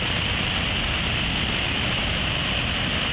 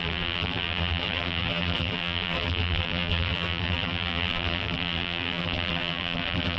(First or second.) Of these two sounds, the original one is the first